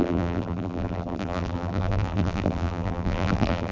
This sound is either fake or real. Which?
fake